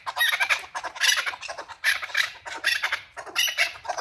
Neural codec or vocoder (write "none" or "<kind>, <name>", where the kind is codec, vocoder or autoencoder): vocoder, BigVGAN v2